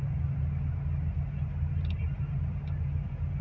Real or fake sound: real